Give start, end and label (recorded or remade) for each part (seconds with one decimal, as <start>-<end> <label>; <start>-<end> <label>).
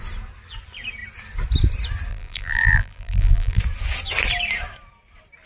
0.0-2.1 recorded; 2.1-3.6 remade; 3.6-5.5 recorded